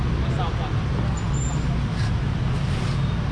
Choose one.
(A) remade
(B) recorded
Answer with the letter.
B